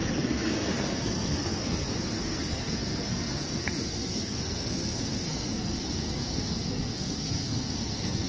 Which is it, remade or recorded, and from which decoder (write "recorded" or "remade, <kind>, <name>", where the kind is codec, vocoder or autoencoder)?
remade, codec, SNAC